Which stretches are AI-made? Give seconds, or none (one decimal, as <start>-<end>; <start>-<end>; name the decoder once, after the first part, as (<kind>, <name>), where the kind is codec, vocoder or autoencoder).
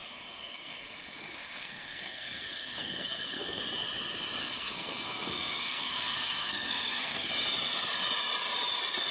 0.0-3.6 (codec, SNAC); 4.4-7.3